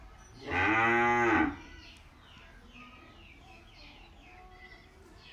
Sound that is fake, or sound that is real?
real